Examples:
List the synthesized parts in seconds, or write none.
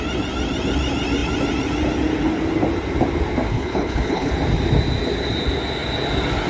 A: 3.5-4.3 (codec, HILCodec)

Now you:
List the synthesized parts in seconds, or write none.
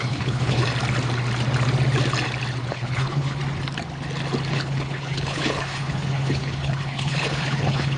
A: 0.0-0.6 (codec, HILCodec); 2.7-3.4; 4.5-8.0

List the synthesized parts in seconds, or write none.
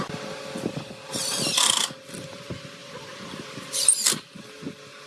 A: none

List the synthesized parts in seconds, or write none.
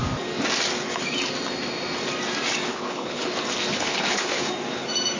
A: 2.7-3.3 (codec, HILCodec); 3.7-4.5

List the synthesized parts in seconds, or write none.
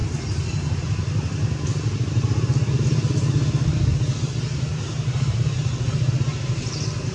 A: none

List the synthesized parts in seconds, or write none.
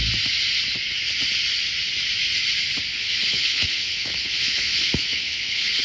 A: 2.9-5.8 (codec, HILCodec)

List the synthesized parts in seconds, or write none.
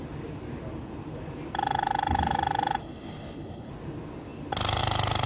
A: 2.8-3.7 (codec, HILCodec)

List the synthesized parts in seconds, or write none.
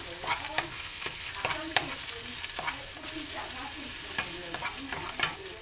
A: 0.7-1.3 (codec, HILCodec)